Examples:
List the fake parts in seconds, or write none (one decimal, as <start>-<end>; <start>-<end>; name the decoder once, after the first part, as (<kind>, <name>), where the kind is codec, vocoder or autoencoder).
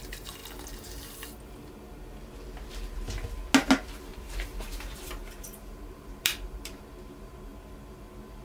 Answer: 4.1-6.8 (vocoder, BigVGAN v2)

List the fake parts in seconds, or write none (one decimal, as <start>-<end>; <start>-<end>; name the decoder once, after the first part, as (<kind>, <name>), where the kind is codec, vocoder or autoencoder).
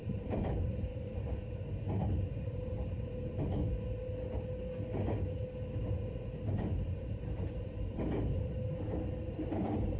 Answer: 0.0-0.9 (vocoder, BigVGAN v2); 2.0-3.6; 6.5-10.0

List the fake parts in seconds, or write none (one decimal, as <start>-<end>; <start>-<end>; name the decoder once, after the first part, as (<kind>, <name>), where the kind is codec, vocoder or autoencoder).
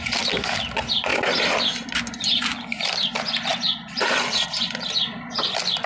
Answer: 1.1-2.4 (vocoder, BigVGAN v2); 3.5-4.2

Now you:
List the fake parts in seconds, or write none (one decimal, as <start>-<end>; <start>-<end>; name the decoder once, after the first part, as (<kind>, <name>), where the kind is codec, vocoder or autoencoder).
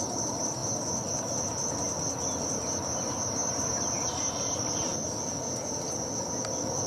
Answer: 0.0-0.6 (vocoder, BigVGAN v2); 2.4-4.9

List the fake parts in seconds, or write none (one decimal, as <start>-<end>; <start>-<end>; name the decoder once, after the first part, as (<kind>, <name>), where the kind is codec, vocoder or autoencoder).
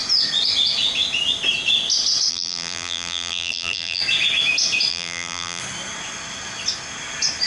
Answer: 2.3-4.0 (vocoder, BigVGAN v2); 4.9-5.6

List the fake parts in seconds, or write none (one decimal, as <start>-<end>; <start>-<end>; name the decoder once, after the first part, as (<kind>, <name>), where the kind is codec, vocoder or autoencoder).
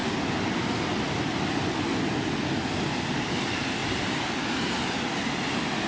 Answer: 3.8-4.8 (vocoder, BigVGAN v2)